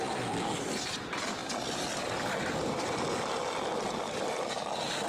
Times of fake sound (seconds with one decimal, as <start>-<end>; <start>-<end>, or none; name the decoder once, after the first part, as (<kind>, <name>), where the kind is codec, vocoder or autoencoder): none

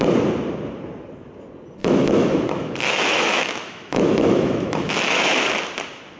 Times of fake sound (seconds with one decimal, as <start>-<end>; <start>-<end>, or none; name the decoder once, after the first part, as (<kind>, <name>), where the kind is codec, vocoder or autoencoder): 1.8-5.5 (autoencoder, DAC-VAE)

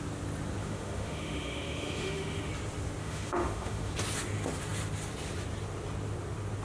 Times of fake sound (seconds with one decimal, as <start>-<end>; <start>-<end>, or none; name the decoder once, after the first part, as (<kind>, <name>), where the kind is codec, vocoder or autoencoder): 0.6-2.5 (autoencoder, DAC-VAE); 3.0-3.9

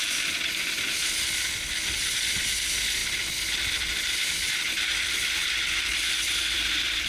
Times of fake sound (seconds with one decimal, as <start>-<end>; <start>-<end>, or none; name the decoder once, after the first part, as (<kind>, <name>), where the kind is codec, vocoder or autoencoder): 3.0-4.9 (vocoder, BigVGAN v2); 5.4-7.1

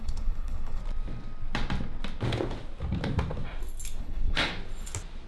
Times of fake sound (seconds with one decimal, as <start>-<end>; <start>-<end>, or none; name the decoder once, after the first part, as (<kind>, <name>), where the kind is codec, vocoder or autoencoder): 0.0-0.8 (codec, HILCodec); 4.0-4.5

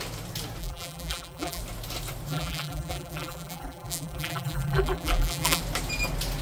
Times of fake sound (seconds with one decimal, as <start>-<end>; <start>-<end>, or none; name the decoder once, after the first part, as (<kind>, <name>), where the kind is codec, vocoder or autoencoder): 0.6-1.6 (vocoder, BigVGAN v2); 2.3-5.6

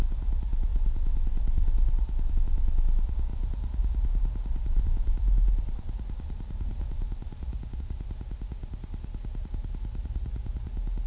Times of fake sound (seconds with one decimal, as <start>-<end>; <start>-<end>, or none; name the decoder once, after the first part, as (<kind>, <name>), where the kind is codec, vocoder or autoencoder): 3.3-7.8 (vocoder, BigVGAN v2)